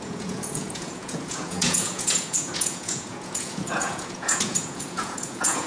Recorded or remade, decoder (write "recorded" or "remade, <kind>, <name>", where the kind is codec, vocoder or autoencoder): remade, vocoder, Vocos